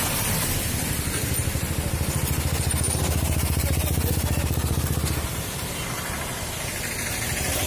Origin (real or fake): real